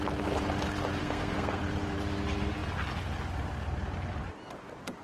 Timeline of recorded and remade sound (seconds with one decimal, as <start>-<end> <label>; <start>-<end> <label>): 0.0-1.0 recorded; 1.0-1.6 remade; 1.6-5.0 recorded